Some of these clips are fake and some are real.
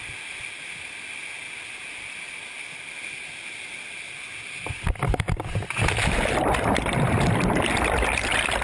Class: real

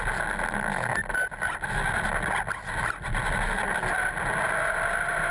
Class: real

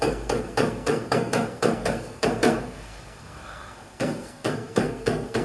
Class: fake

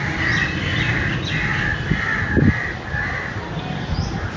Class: real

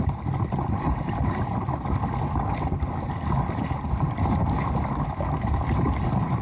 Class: real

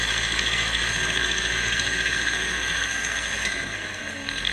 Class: fake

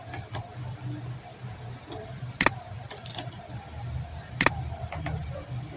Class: real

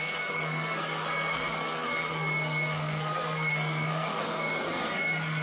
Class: fake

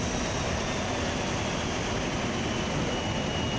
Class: real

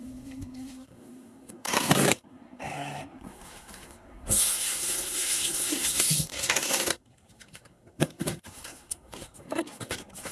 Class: fake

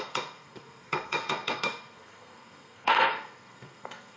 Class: fake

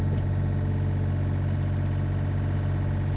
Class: real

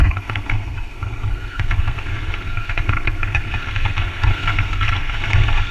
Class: fake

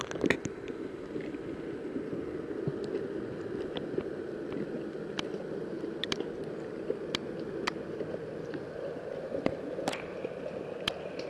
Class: real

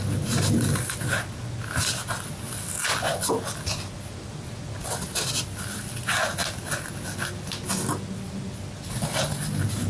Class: real